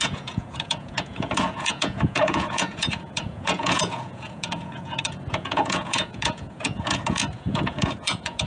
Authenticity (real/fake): fake